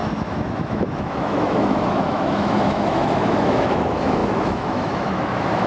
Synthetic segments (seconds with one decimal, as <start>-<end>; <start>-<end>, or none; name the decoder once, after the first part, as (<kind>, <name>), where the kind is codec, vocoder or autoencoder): 0.0-5.7 (autoencoder, DAC-VAE)